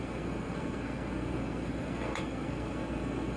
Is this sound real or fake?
fake